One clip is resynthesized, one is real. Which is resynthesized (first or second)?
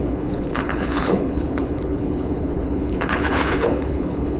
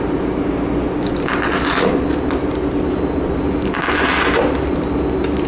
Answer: first